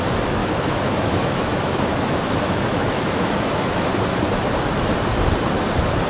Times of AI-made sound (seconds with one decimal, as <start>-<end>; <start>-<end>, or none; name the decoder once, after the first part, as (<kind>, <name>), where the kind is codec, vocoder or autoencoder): 0.4-3.9 (autoencoder, DAC-VAE)